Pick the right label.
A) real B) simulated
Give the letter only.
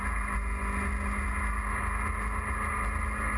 A